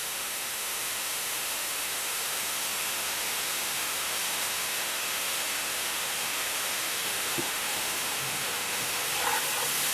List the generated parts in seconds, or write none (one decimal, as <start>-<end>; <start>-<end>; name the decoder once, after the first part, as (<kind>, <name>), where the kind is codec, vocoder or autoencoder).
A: 0.0-9.0 (autoencoder, DAC-VAE)